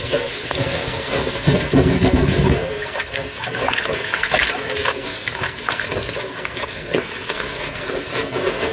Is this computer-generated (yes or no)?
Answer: yes